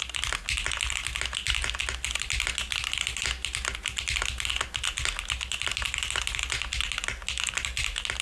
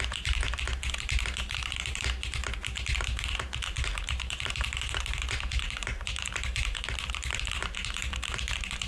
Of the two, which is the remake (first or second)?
second